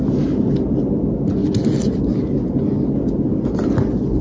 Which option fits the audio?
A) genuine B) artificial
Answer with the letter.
A